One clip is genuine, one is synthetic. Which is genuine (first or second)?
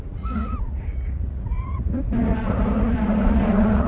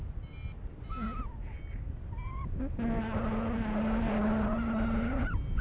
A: second